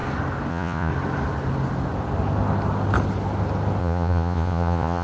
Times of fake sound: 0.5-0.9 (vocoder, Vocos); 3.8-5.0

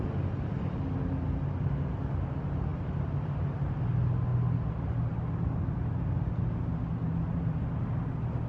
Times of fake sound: none

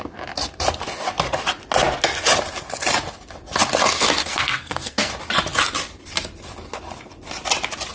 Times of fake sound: 4.2-5.1 (codec, SNAC)

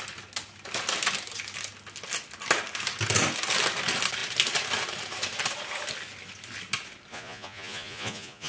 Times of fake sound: 7.1-8.5 (vocoder, Vocos)

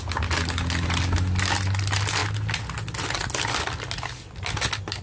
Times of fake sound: none

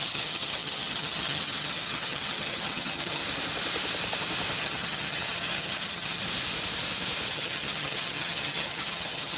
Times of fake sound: 0.0-3.2 (vocoder, HiFi-GAN); 4.6-6.2; 7.3-9.4

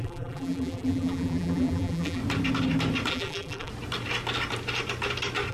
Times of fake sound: 0.0-2.2 (vocoder, BigVGAN v2); 3.1-3.7